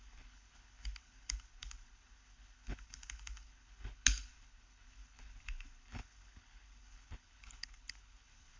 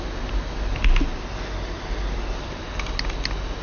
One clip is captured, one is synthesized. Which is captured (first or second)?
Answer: second